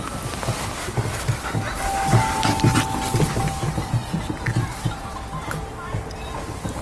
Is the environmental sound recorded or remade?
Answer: recorded